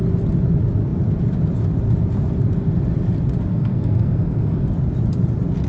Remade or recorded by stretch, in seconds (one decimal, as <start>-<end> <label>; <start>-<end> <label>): 0.0-3.5 recorded; 3.5-4.7 remade; 4.7-5.7 recorded